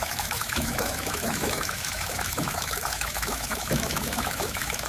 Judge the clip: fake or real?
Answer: fake